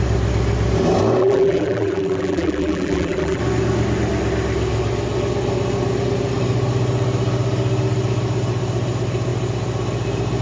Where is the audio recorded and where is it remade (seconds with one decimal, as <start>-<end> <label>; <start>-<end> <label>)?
0.0-1.2 recorded; 1.2-3.4 remade; 3.4-10.4 recorded